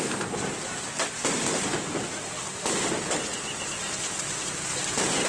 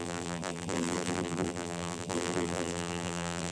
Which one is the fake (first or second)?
second